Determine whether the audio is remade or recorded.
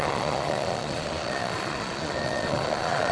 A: remade